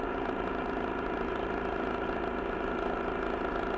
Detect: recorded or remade remade